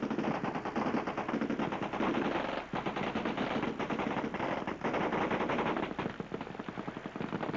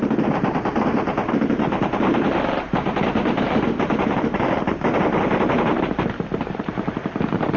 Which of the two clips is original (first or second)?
first